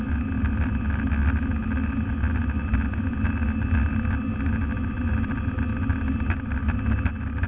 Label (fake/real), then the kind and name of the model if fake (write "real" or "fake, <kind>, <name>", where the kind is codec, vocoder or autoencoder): real